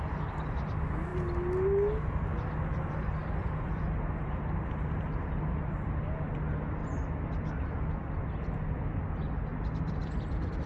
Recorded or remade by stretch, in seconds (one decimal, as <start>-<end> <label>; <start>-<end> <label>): 0.0-10.7 recorded

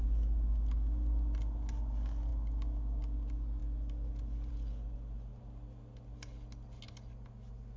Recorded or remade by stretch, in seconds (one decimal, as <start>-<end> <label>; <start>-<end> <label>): 0.0-7.8 recorded

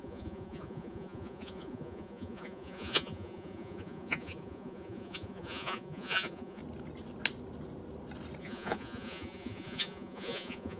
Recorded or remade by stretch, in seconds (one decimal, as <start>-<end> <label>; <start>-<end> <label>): 0.0-6.6 remade; 6.6-8.4 recorded; 8.4-10.8 remade